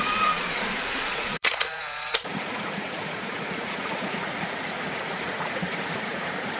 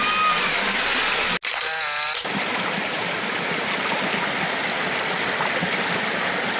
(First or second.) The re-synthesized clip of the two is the first